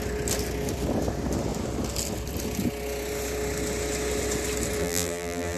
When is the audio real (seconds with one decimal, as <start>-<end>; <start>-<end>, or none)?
0.0-4.8